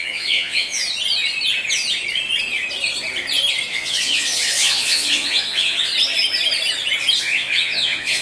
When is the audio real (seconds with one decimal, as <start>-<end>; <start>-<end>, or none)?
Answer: 0.8-3.7; 5.9-7.2